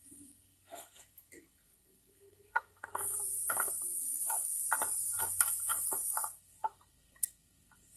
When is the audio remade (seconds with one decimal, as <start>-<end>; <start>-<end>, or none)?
0.0-4.6; 5.2-8.0